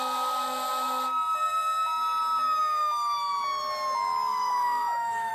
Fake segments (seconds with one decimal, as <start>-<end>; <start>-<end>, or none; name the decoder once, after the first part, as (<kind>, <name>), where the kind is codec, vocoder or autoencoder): 4.3-5.3 (autoencoder, DAC-VAE)